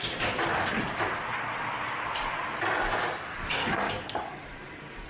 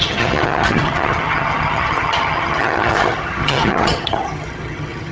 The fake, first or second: second